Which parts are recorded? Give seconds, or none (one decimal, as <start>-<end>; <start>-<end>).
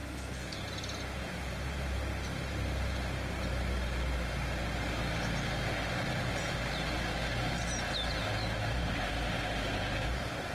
0.6-10.5